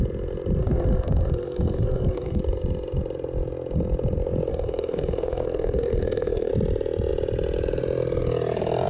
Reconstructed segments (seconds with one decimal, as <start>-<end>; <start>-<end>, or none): 0.6-2.4; 4.5-6.5